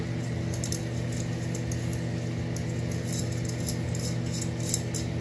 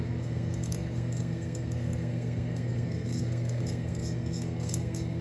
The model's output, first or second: second